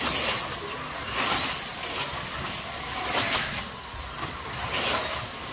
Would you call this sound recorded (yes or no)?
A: yes